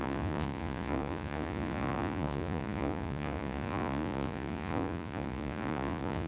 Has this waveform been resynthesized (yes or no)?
yes